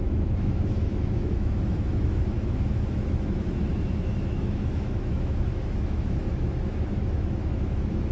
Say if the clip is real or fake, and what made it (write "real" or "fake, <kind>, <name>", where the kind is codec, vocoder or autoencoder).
fake, autoencoder, DAC-VAE